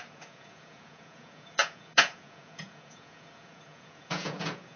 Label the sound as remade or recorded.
remade